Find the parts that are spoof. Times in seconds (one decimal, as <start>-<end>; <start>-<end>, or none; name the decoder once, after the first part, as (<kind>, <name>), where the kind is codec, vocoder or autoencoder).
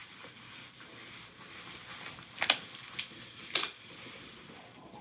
none